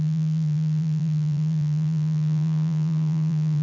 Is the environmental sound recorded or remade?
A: remade